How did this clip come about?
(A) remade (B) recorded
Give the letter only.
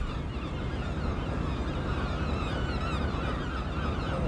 B